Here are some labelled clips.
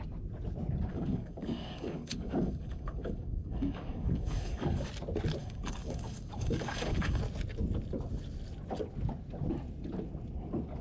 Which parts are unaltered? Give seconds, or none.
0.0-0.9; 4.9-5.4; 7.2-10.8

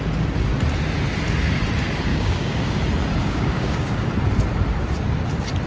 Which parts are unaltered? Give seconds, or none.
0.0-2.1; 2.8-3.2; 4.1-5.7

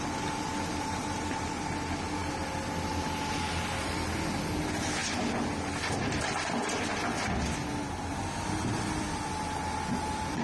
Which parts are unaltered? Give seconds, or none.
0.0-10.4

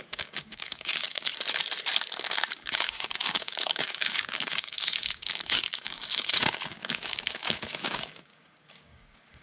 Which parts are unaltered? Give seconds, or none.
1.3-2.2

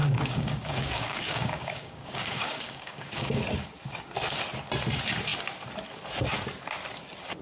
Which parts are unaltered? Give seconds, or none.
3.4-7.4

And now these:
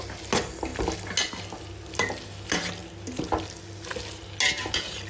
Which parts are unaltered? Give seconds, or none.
0.0-5.1

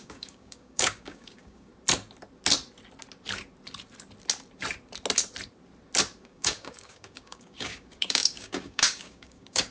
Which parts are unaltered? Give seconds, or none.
1.7-6.2